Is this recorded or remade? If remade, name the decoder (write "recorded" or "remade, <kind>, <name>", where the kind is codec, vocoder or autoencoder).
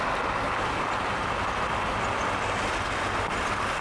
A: recorded